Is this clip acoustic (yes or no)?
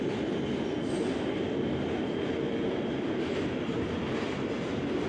yes